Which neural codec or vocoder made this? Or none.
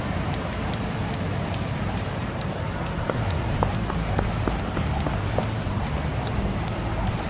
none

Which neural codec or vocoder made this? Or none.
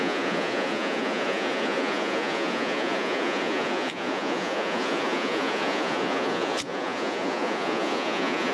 vocoder, Vocos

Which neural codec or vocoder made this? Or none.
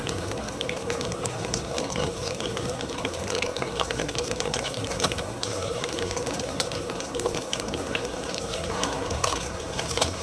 codec, SNAC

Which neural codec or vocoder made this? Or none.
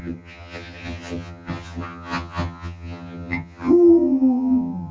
vocoder, HiFi-GAN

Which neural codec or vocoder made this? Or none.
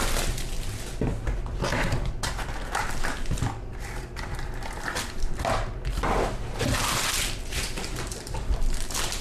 none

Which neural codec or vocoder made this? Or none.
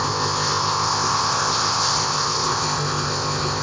codec, ZipCodec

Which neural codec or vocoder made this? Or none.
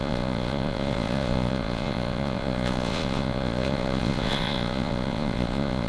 vocoder, Vocos